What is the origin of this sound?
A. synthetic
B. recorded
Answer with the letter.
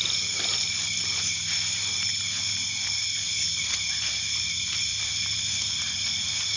B